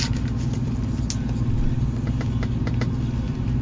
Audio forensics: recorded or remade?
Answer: recorded